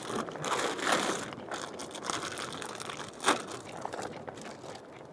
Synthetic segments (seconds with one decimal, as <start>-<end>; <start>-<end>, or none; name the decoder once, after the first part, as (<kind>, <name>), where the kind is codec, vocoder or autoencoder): none